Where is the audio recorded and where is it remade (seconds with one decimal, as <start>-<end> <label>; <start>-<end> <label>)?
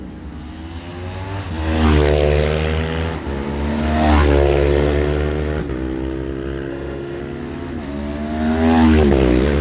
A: 0.0-6.7 recorded; 6.7-7.2 remade; 7.2-9.6 recorded